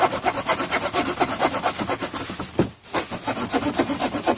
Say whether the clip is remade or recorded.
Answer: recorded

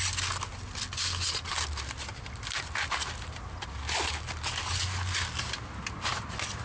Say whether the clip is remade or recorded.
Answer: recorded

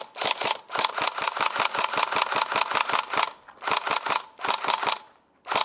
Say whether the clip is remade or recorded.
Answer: recorded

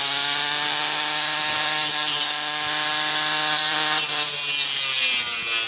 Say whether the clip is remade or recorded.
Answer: recorded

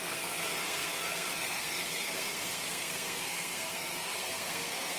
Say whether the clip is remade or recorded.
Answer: remade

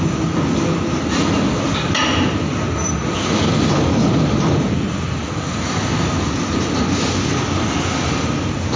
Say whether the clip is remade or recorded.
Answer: recorded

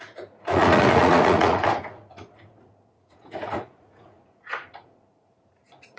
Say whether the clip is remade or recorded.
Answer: remade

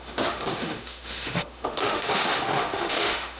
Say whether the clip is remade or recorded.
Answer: remade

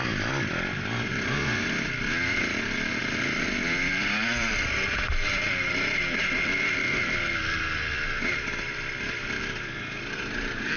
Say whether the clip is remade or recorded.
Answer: remade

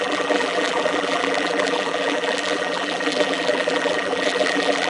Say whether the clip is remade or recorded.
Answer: remade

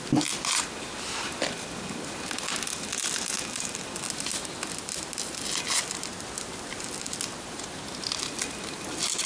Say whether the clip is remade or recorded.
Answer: recorded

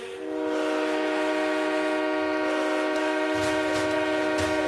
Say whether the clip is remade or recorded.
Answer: recorded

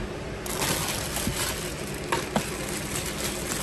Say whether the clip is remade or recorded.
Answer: recorded